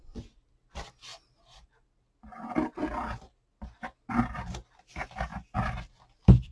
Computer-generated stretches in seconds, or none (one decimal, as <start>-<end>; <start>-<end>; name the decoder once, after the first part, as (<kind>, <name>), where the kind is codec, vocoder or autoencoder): 5.3-6.5 (vocoder, BigVGAN v2)